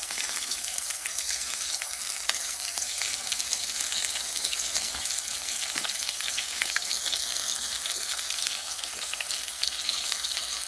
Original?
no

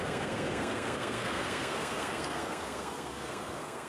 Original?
no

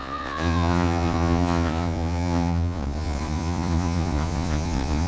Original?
no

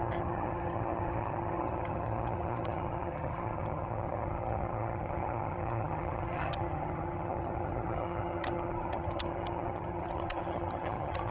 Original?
no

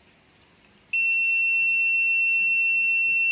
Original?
yes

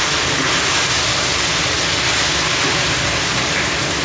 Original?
yes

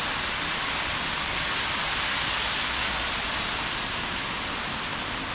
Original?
yes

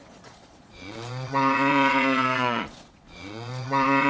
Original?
no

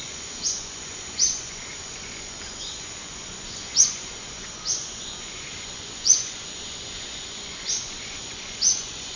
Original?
no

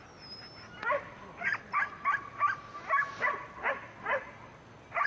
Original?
yes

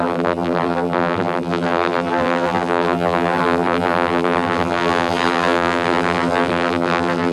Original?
no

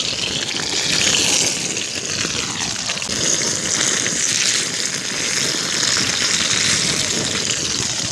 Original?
yes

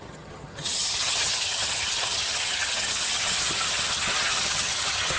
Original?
no